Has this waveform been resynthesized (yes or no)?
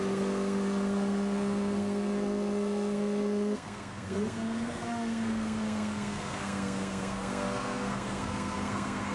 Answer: yes